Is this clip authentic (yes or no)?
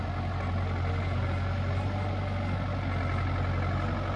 yes